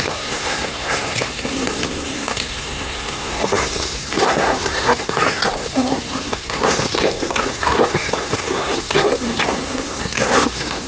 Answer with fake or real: fake